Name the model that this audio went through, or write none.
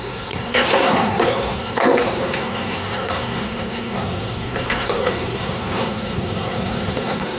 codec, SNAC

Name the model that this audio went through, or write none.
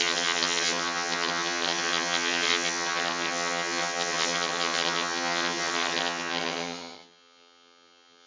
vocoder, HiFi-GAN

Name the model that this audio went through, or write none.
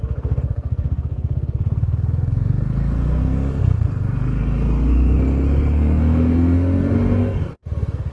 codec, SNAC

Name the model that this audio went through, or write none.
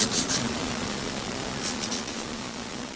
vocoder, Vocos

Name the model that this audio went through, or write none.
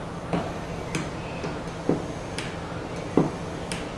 none